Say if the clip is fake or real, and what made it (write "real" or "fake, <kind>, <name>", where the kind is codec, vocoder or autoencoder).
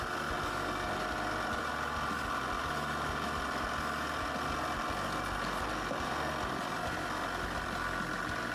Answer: real